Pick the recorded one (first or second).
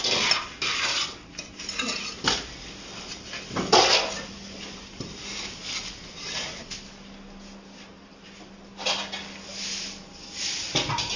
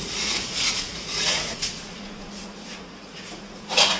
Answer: first